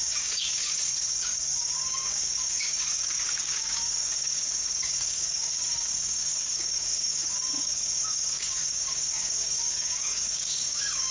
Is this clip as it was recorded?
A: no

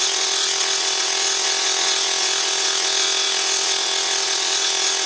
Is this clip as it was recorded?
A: no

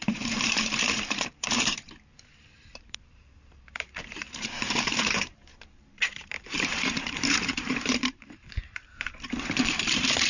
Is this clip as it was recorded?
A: no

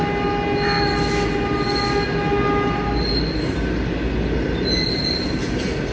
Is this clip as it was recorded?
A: yes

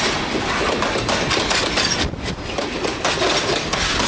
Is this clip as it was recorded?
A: yes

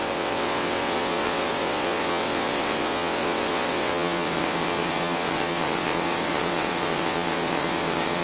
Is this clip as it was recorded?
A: no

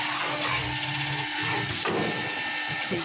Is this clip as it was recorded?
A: yes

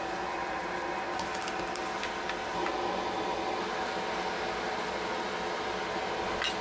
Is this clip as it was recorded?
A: yes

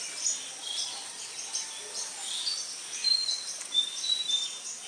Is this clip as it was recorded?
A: yes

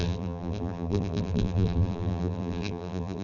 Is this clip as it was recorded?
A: no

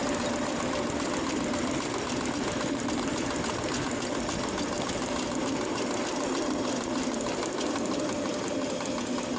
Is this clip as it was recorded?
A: yes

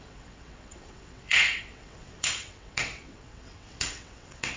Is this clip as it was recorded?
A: no